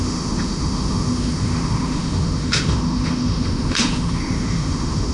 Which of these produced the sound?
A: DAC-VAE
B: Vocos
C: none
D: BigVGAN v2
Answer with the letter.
A